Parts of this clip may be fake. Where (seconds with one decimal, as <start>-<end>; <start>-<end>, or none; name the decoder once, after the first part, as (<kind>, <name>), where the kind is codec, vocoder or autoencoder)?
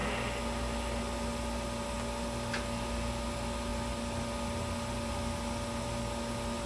none